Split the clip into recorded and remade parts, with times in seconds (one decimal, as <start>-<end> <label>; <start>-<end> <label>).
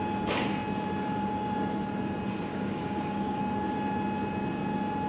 0.0-2.5 recorded; 2.5-3.4 remade; 3.4-5.1 recorded